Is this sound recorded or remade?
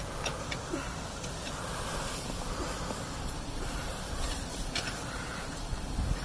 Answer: remade